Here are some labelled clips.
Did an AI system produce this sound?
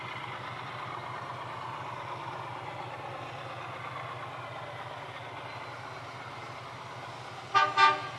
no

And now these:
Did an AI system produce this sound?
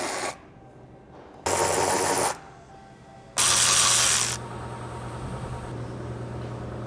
no